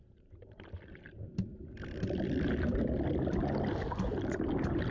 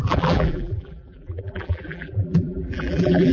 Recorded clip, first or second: first